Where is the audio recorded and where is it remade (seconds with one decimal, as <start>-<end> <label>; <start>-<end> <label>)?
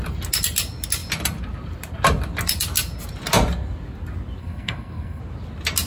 0.0-4.4 recorded; 4.4-5.2 remade; 5.2-5.9 recorded